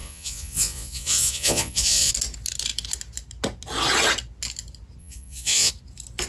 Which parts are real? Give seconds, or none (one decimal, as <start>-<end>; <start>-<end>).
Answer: 2.1-5.0; 5.7-6.3